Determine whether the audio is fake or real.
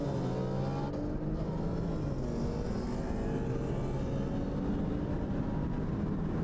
real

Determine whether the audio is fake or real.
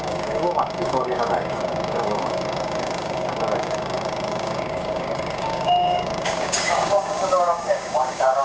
fake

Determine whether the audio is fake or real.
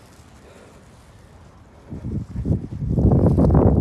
real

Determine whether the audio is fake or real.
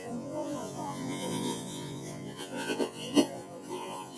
fake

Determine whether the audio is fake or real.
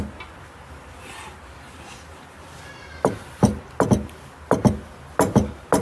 real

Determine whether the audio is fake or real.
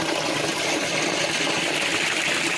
real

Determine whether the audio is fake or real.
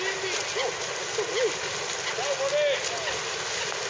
real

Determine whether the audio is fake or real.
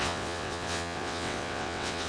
fake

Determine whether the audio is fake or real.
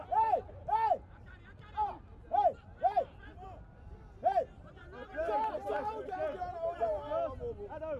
real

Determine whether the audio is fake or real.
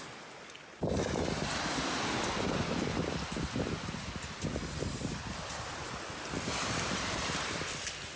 real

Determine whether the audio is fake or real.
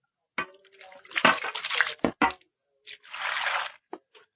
real